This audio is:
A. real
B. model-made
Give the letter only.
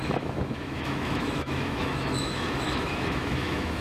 B